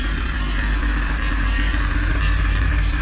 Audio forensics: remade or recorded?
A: recorded